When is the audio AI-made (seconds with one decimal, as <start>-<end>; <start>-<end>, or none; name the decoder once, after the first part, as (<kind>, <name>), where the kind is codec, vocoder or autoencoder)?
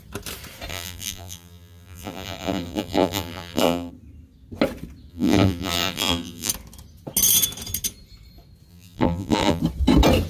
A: 0.7-3.9 (vocoder, BigVGAN v2); 5.1-6.5; 8.7-9.6